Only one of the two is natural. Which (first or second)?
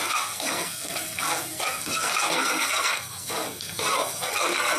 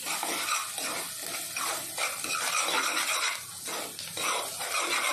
second